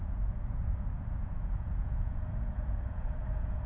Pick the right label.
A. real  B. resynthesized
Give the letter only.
B